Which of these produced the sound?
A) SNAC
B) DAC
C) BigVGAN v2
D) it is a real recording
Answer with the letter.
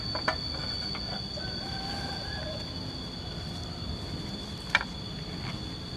D